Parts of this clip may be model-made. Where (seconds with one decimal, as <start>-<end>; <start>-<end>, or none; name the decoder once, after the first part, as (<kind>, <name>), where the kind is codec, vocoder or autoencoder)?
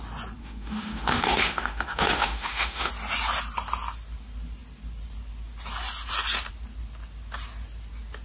0.4-2.9 (autoencoder, DAC-VAE)